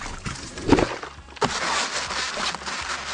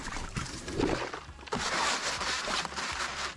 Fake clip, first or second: second